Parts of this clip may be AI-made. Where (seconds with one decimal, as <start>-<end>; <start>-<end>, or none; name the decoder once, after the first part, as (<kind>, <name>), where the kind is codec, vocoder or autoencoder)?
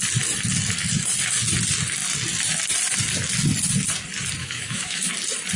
4.4-5.1 (autoencoder, DAC-VAE)